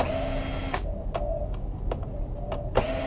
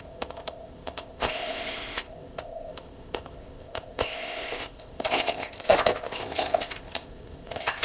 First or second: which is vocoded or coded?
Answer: second